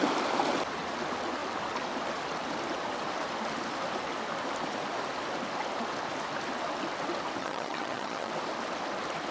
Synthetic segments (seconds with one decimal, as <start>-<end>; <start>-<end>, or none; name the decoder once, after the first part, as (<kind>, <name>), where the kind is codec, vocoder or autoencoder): 7.4-8.3 (vocoder, HiFi-GAN)